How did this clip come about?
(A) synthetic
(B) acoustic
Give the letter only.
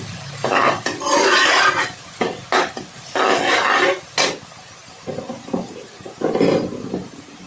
B